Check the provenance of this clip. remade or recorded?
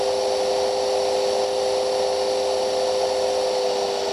recorded